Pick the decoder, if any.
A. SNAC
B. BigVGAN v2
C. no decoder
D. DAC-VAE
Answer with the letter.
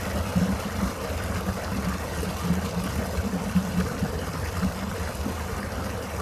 C